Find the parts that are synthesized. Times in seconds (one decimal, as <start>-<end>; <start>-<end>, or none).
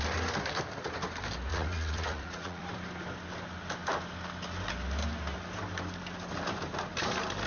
1.5-2.6